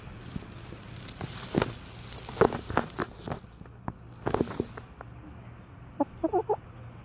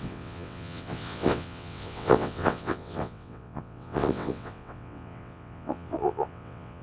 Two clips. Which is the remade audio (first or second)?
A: second